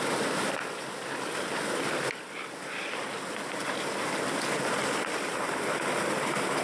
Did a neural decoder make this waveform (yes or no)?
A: no